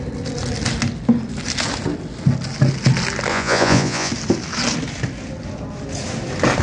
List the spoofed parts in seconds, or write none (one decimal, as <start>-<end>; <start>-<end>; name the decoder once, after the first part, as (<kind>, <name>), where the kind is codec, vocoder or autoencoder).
3.3-4.1 (vocoder, Vocos)